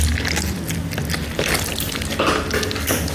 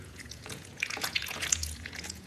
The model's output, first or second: second